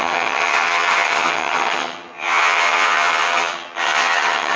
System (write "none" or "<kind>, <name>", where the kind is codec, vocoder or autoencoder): vocoder, HiFi-GAN